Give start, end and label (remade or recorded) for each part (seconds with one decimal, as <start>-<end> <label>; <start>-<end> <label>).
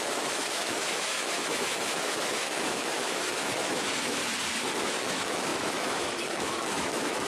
0.0-4.2 remade; 4.2-4.8 recorded; 4.8-7.3 remade